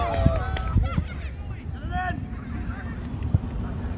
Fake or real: real